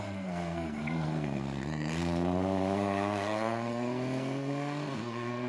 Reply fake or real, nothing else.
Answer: fake